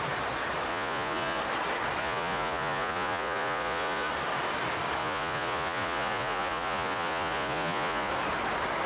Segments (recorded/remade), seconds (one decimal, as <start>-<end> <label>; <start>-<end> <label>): 0.0-0.7 recorded; 0.7-1.4 remade; 1.4-2.0 recorded; 2.0-4.1 remade; 4.1-5.0 recorded; 5.0-8.1 remade; 8.1-8.9 recorded